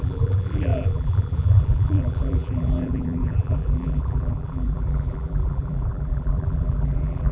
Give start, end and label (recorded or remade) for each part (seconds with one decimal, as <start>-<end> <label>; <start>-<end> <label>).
0.0-7.3 remade